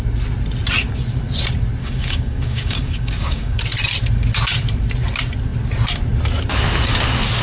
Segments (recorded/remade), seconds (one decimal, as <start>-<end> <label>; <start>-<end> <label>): 0.0-1.8 recorded; 1.8-3.6 remade; 3.6-7.4 recorded